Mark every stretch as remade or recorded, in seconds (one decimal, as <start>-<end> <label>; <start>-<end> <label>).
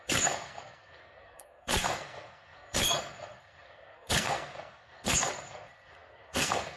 0.0-6.8 remade